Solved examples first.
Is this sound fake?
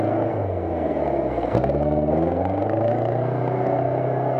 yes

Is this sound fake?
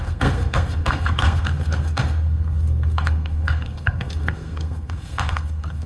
yes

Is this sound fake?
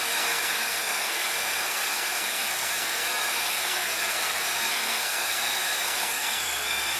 yes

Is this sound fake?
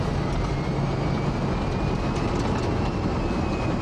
no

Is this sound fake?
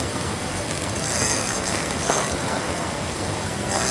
yes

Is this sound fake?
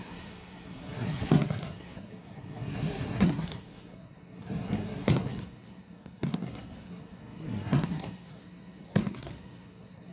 yes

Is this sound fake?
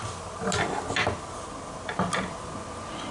no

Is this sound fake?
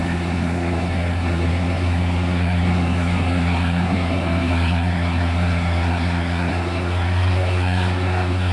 yes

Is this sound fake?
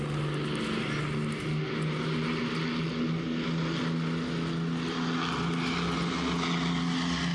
no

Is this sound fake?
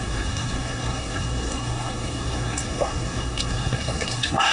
yes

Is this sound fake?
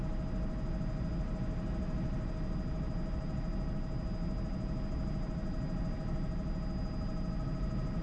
no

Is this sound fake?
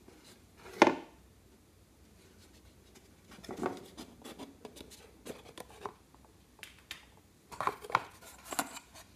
no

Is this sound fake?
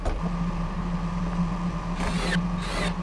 no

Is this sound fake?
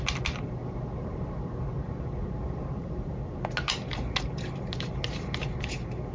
no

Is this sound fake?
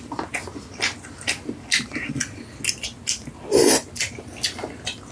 no